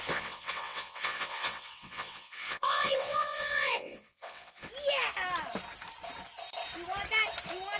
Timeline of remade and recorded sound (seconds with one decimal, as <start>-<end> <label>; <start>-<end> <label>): 0.0-4.7 remade; 4.7-7.8 recorded